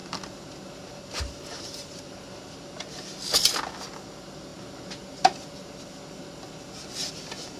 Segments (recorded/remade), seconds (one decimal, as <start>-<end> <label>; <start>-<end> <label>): 0.0-1.5 recorded; 1.5-2.1 remade; 2.1-7.6 recorded